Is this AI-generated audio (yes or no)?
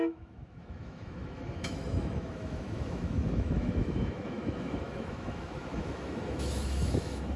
yes